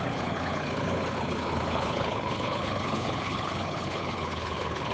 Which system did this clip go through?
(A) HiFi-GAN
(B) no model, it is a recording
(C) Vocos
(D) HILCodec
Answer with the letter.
D